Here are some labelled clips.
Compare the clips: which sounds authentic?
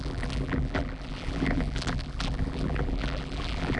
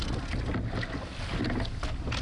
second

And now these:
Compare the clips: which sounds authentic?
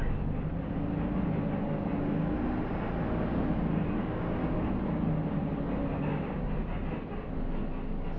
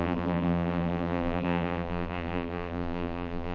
first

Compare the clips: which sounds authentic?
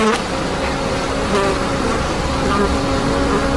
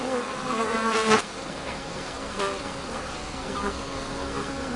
first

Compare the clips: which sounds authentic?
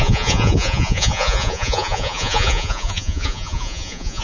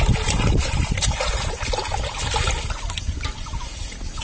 second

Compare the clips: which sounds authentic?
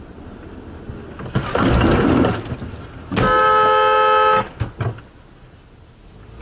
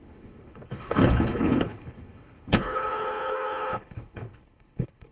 first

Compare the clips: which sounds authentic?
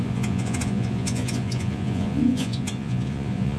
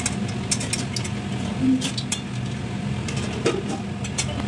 second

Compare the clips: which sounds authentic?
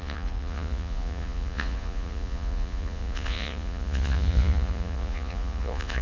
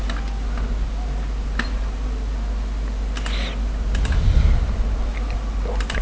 second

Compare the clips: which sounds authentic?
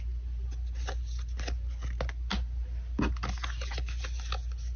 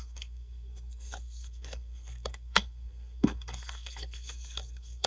first